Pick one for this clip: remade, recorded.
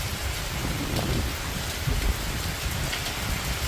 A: recorded